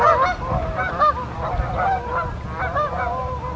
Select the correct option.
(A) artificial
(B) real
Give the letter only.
B